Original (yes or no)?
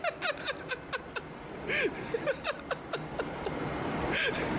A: yes